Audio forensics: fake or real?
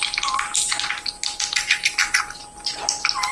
real